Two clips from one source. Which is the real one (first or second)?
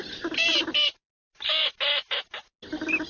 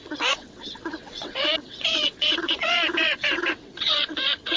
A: first